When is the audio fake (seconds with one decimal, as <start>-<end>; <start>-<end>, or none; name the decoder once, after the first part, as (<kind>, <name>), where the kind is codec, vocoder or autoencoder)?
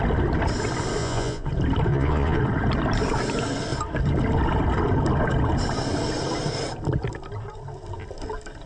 1.0-1.5 (vocoder, Vocos); 1.9-2.4